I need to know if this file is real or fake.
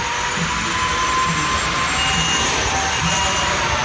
real